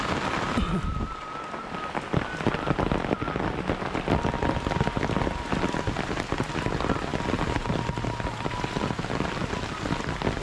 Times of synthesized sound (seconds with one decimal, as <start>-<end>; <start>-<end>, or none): none